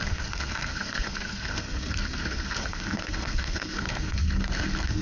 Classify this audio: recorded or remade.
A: remade